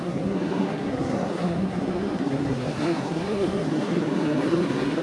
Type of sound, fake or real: fake